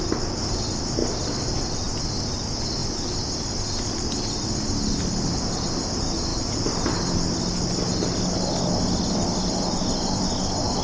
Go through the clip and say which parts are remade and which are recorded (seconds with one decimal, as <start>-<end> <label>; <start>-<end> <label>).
0.0-10.8 recorded